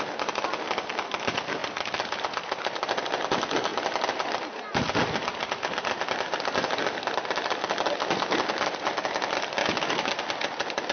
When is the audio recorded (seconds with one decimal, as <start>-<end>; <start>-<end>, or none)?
0.0-9.6; 10.1-10.9